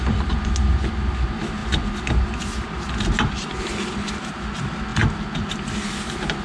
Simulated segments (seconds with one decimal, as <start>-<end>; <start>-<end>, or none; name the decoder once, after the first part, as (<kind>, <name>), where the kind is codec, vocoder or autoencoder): none